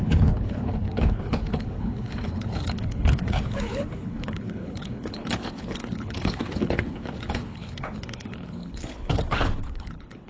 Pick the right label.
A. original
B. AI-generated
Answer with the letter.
B